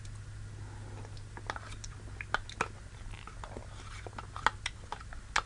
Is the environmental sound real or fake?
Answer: real